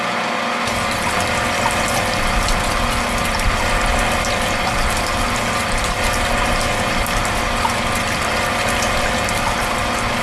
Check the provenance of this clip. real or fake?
real